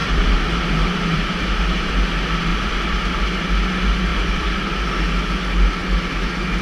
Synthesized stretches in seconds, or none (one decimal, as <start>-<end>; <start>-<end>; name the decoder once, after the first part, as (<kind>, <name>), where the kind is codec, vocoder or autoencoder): 0.0-1.9 (vocoder, BigVGAN v2); 2.5-3.2; 4.1-4.6